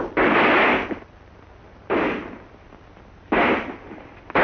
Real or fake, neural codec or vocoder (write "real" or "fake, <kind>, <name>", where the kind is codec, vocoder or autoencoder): real